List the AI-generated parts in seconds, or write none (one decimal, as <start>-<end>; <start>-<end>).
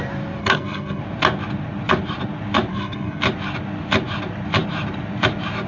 0.4-1.0; 2.7-3.2